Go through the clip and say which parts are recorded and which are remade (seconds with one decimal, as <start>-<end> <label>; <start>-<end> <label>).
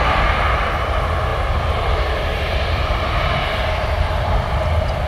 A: 0.0-5.1 remade